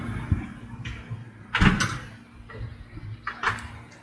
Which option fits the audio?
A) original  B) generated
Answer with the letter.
A